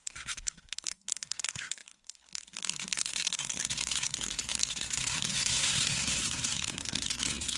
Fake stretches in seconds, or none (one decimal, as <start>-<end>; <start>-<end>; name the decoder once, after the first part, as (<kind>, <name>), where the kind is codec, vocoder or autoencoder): 0.0-7.6 (codec, SNAC)